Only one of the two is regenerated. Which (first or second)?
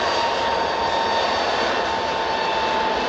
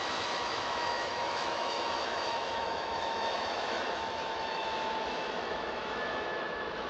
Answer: second